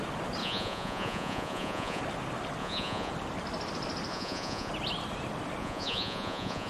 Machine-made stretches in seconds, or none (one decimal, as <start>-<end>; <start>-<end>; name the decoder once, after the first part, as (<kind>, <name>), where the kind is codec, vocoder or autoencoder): 0.4-2.0 (vocoder, Vocos); 2.6-3.1; 4.1-4.7; 5.6-6.7